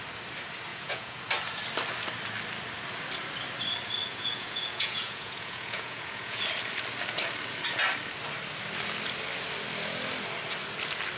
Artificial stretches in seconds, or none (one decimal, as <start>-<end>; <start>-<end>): 0.7-1.2; 4.0-6.4